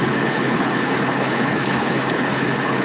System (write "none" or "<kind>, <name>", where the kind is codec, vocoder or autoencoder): codec, HILCodec